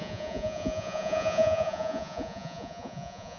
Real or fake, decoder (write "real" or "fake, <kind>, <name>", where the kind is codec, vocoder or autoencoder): fake, vocoder, Vocos